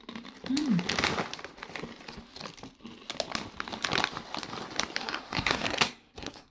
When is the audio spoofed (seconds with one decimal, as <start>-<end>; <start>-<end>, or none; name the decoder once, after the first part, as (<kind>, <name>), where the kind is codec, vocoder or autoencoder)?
5.0-6.5 (codec, SNAC)